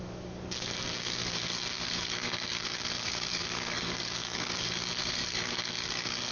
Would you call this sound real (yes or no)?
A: no